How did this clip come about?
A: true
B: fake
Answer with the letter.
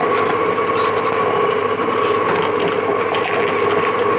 A